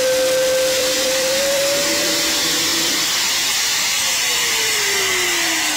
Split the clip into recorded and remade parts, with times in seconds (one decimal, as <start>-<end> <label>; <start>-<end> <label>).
0.0-0.8 recorded; 0.8-2.1 remade; 2.1-2.7 recorded; 2.7-5.8 remade